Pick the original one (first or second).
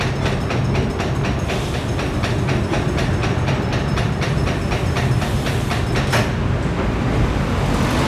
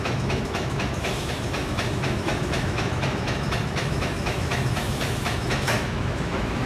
first